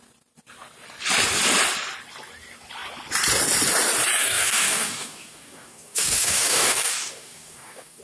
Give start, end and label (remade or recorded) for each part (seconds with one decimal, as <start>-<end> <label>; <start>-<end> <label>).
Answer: 0.0-4.2 recorded; 4.2-8.0 remade